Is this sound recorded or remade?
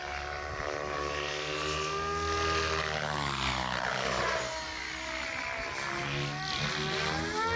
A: recorded